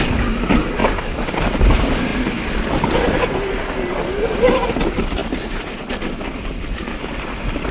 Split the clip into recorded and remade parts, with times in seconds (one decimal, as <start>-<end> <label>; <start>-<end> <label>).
0.0-0.8 recorded; 0.8-1.3 remade; 1.3-6.8 recorded; 6.8-7.7 remade